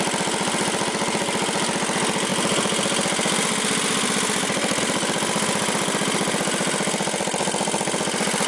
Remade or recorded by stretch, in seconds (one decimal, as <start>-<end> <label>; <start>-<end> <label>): 0.0-8.5 recorded